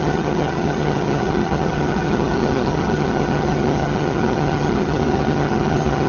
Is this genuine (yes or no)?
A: no